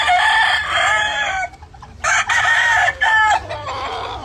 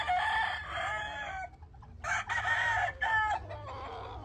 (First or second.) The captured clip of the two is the second